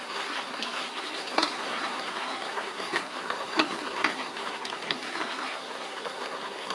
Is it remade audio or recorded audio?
remade